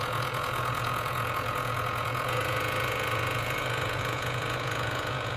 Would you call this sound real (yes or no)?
no